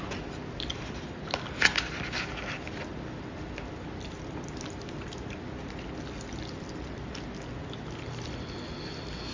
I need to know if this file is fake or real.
real